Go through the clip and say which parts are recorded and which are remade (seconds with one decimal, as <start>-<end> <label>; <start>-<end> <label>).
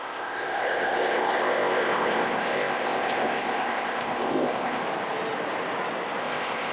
0.0-4.8 remade; 4.8-6.2 recorded; 6.2-6.7 remade